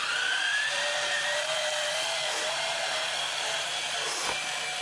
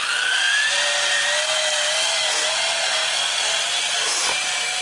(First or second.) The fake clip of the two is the first